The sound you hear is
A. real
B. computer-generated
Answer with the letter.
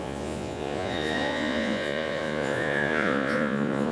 B